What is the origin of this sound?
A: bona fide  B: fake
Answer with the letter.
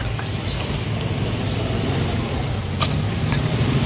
A